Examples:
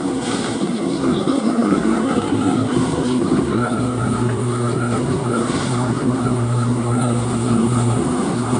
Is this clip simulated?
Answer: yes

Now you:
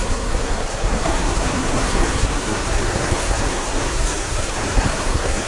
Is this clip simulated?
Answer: yes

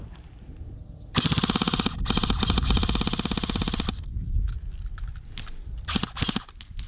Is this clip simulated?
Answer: no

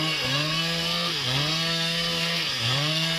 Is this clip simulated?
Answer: yes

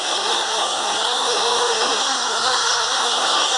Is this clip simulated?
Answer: yes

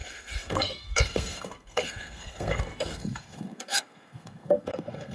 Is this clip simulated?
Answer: yes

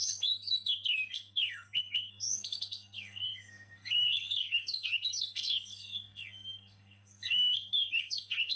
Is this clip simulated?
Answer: yes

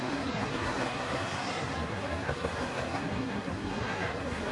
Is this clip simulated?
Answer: yes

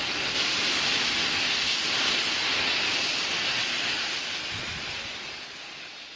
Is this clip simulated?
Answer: no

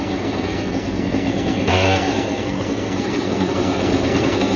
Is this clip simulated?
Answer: yes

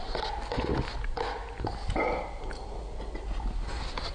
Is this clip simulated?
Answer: no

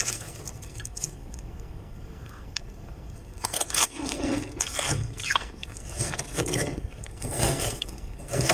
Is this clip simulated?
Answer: yes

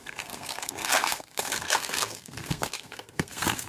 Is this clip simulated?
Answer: yes